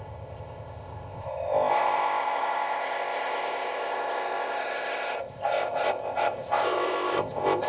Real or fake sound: fake